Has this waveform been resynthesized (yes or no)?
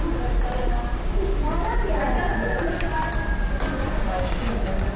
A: no